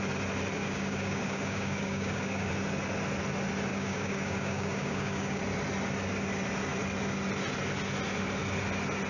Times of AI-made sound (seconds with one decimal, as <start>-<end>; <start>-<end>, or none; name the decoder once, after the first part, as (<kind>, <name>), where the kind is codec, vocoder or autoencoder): 0.6-2.5 (codec, DAC); 3.7-5.4